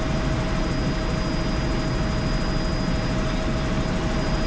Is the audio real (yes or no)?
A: yes